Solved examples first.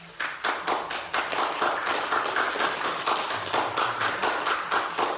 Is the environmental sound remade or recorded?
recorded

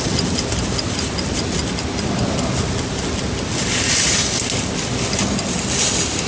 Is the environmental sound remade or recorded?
recorded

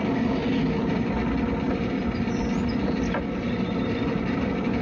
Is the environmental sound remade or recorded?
recorded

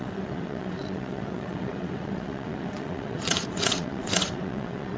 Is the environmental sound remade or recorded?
remade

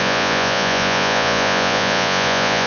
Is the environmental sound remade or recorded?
remade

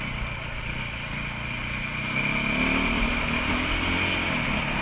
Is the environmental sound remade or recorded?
recorded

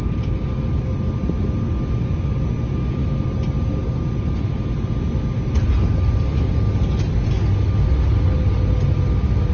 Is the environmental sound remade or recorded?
recorded